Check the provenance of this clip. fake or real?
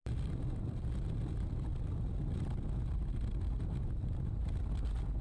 fake